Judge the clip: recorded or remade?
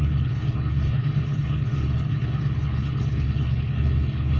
remade